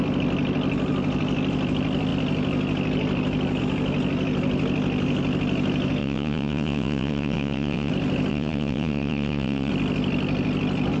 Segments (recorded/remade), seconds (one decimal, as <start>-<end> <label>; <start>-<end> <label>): 0.0-6.0 recorded; 6.0-7.9 remade; 7.9-8.3 recorded; 8.3-9.7 remade; 9.7-11.0 recorded